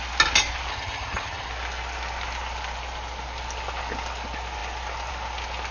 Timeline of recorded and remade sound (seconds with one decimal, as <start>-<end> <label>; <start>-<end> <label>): 0.0-0.7 recorded; 0.7-1.5 remade; 1.5-5.7 recorded